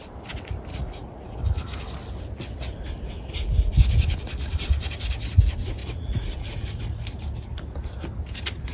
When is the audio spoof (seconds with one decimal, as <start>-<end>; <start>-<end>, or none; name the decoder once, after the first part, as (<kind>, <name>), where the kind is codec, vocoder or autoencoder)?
0.7-1.3 (vocoder, Vocos); 5.8-6.8